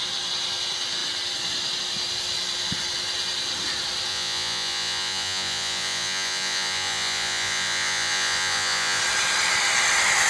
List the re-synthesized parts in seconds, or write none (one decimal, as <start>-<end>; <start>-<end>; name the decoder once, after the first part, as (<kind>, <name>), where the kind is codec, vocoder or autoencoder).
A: 4.1-9.0 (vocoder, Vocos)